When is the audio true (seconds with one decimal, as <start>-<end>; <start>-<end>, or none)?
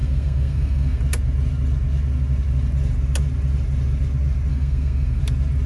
1.0-4.5; 5.2-5.7